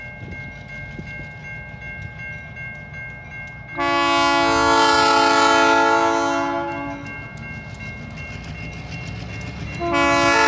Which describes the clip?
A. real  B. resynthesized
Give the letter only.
A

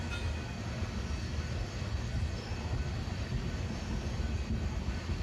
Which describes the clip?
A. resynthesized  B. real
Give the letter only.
B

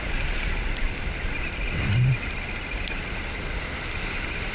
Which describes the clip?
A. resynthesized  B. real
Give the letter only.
B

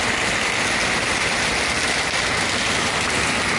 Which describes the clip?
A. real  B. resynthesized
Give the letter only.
A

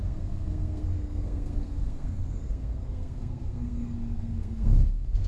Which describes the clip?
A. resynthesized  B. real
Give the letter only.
A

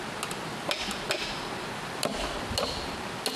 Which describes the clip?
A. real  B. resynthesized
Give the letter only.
A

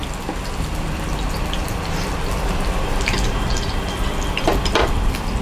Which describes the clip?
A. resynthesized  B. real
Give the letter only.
B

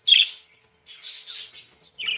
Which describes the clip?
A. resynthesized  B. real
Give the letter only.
B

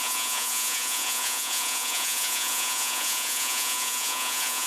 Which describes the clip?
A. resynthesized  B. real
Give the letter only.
A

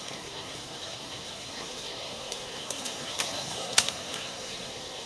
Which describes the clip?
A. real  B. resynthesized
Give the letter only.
B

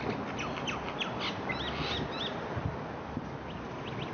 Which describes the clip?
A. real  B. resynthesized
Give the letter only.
A